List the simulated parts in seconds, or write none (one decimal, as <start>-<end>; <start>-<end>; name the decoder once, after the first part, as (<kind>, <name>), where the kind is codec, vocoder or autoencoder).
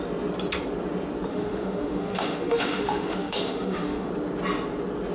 1.3-4.1 (autoencoder, DAC-VAE)